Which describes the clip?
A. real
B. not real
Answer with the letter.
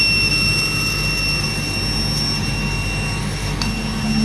A